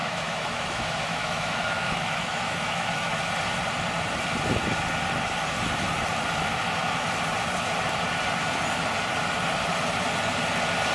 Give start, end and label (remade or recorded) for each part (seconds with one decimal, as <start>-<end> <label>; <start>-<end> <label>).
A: 0.0-3.3 remade; 3.3-10.9 recorded